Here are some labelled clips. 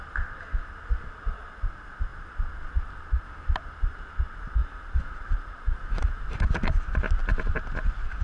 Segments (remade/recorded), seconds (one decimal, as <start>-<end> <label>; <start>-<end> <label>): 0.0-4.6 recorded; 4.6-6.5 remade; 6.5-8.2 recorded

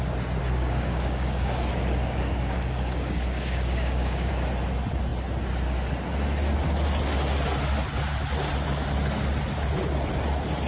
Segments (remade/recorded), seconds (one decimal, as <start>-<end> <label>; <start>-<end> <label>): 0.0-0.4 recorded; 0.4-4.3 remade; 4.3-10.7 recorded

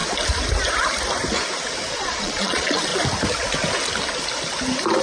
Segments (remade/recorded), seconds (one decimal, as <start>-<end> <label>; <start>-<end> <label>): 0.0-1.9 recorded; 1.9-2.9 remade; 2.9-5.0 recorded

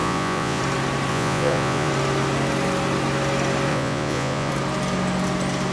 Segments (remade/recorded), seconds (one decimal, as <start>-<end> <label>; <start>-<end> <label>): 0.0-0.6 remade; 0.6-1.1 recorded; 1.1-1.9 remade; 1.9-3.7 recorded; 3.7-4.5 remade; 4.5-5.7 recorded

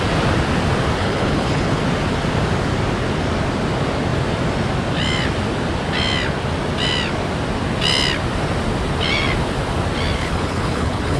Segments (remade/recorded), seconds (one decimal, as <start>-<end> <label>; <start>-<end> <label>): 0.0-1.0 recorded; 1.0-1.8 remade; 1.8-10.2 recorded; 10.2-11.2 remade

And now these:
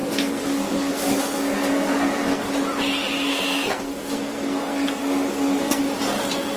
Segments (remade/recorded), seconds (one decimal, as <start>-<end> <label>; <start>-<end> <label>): 0.0-2.4 remade; 2.4-3.3 recorded; 3.3-5.8 remade; 5.8-6.6 recorded

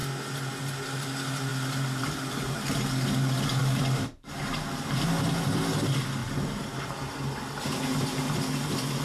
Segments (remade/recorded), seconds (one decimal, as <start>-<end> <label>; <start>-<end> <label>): 0.0-1.5 recorded; 1.5-2.7 remade; 2.7-3.6 recorded; 3.6-5.0 remade; 5.0-6.2 recorded; 6.2-6.8 remade; 6.8-9.0 recorded